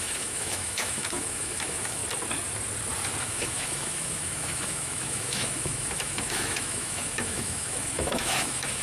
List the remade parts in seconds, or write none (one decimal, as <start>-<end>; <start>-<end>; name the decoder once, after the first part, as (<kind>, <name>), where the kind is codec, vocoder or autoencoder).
0.0-2.0 (autoencoder, DAC-VAE); 3.2-8.8